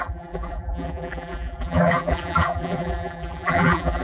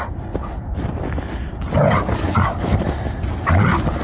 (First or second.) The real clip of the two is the second